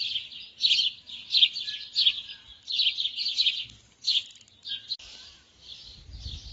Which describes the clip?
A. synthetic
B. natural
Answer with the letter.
B